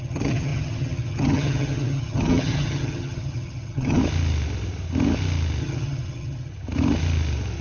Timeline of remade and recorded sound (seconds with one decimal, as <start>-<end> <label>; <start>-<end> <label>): 0.0-4.0 remade; 4.0-5.6 recorded; 5.6-6.5 remade; 6.5-7.6 recorded